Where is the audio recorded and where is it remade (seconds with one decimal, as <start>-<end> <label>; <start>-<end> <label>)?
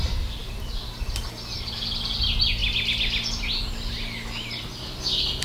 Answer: 0.0-0.4 recorded; 0.4-1.2 remade; 1.2-5.4 recorded